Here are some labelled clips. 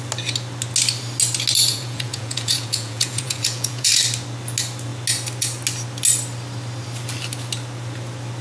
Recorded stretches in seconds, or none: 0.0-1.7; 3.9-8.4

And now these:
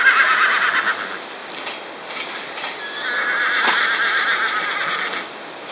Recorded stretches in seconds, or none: 0.0-5.7